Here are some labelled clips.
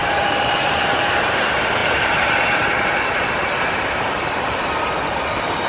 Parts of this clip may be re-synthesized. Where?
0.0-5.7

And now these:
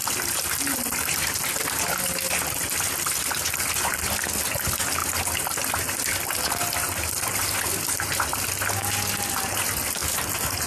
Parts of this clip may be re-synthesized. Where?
10.0-10.7

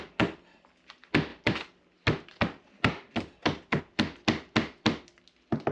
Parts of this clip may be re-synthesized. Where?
none